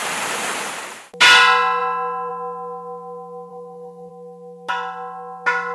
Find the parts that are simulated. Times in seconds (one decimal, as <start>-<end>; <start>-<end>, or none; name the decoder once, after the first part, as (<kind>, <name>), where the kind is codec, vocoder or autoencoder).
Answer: 3.5-4.1 (codec, SNAC)